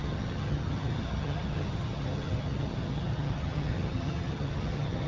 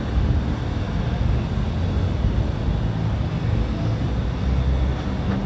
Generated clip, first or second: first